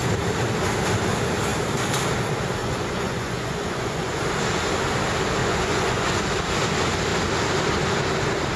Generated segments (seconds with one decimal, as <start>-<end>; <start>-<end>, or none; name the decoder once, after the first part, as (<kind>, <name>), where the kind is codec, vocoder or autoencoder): 2.6-4.2 (vocoder, Vocos); 5.4-6.2